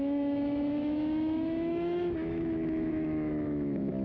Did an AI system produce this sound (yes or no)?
yes